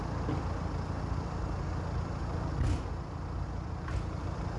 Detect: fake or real real